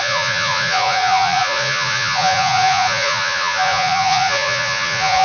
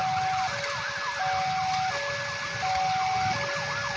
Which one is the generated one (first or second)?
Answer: first